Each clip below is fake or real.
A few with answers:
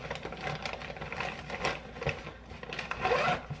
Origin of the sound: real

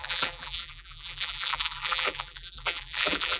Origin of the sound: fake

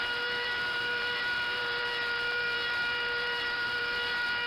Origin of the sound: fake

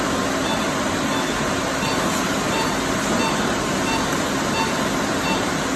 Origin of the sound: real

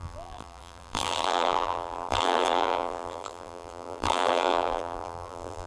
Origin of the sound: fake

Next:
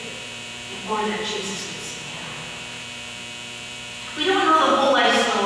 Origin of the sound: fake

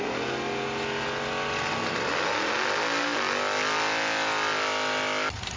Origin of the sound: real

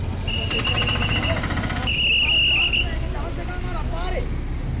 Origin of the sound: real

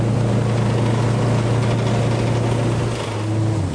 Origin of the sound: real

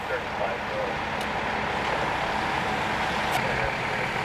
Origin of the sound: real